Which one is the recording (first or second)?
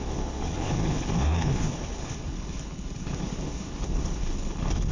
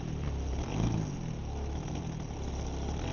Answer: second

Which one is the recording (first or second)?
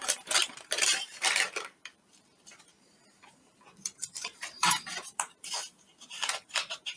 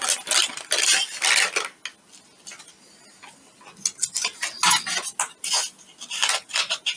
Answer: second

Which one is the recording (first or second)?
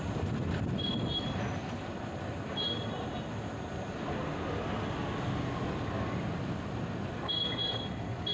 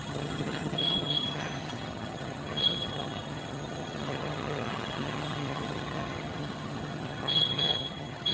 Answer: first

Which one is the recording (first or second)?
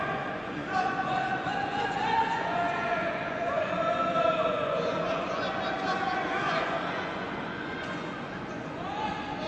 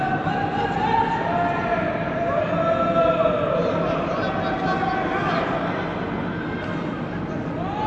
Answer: second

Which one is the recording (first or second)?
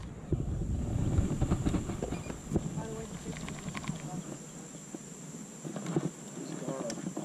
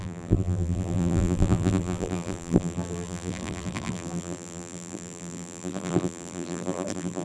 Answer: first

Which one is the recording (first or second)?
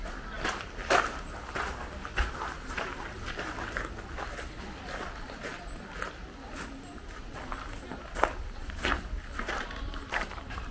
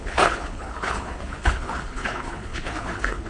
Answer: first